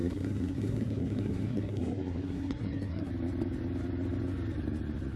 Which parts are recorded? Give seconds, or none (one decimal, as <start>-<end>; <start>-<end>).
3.1-5.2